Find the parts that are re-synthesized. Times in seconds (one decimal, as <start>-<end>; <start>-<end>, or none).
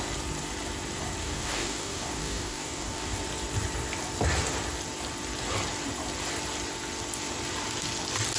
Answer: 1.2-3.2